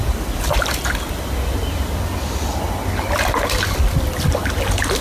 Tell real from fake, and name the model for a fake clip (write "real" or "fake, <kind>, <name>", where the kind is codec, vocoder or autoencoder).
real